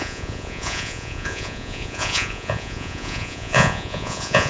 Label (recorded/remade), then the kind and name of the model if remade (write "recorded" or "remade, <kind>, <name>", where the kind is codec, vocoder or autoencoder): remade, vocoder, Vocos